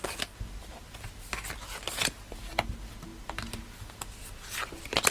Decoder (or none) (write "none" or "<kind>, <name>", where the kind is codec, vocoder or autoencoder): none